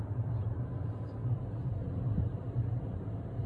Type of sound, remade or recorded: remade